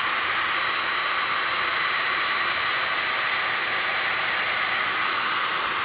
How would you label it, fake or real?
real